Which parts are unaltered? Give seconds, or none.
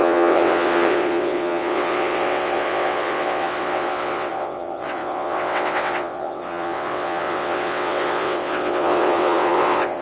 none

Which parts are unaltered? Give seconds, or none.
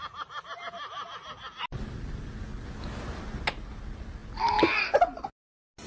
0.0-5.9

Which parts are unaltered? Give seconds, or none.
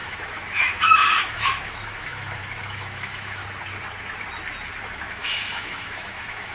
3.4-4.8